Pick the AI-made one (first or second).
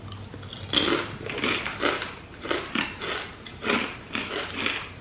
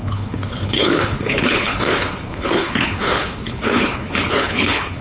second